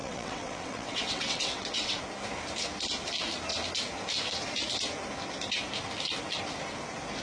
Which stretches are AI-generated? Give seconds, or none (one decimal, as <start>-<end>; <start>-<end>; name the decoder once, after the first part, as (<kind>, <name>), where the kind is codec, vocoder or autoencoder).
0.0-2.0 (vocoder, WaveNeXt)